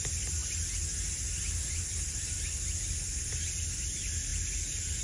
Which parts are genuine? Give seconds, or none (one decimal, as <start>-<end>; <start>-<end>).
0.0-5.0